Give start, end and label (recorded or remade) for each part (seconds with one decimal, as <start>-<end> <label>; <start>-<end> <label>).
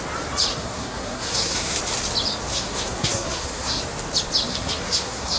0.0-0.5 recorded; 0.5-1.8 remade; 1.8-2.5 recorded; 2.5-3.8 remade; 3.8-4.5 recorded; 4.5-5.4 remade